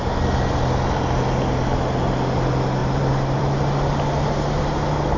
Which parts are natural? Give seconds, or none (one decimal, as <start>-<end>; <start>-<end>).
0.0-2.8; 3.4-5.2